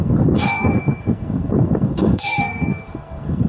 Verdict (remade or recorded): remade